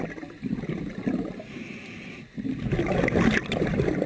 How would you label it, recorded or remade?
recorded